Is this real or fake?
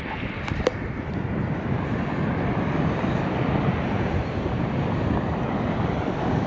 fake